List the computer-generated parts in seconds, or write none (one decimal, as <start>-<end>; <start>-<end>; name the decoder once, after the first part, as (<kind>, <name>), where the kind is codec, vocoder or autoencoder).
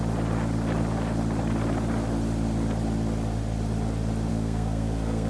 4.3-5.3 (codec, SNAC)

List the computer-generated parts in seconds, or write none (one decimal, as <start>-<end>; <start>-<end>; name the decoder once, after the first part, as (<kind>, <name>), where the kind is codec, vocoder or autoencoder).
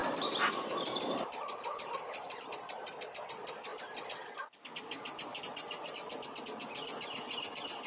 0.0-2.9 (vocoder, BigVGAN v2)